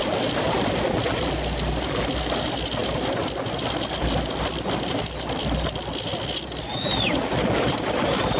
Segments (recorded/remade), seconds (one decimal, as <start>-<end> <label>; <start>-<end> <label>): 0.0-8.4 recorded